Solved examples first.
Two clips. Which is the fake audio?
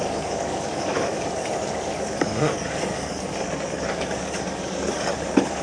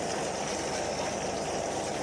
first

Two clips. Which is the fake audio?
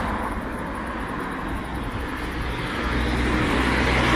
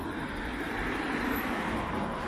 second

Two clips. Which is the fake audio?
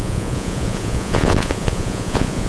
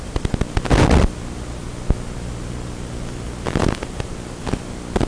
first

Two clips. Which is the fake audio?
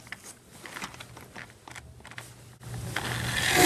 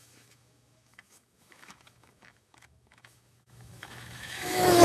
second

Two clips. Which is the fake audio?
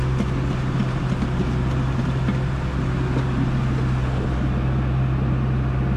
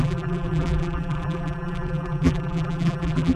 second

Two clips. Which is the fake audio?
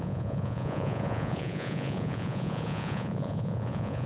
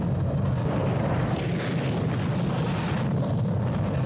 first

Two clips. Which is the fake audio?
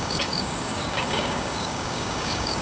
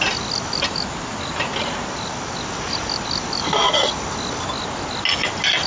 first